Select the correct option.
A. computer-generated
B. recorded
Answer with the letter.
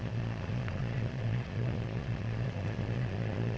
A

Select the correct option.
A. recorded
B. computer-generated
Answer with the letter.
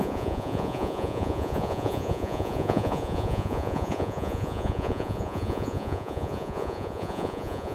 B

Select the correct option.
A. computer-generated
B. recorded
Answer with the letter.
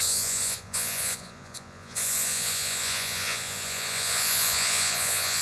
A